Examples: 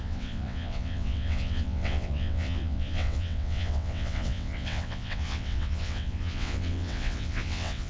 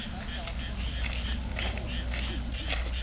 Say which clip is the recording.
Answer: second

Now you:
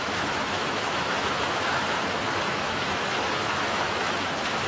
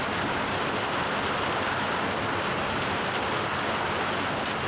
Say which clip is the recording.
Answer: second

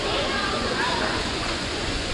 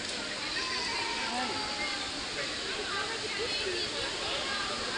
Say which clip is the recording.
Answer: second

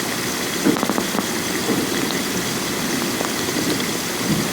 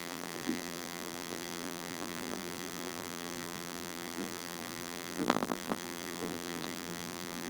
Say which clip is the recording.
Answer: first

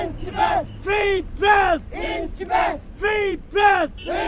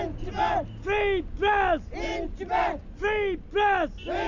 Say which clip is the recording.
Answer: second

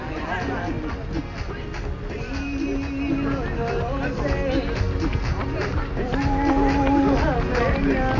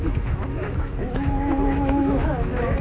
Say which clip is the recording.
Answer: first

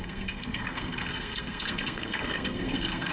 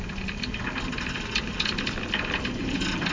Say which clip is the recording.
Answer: second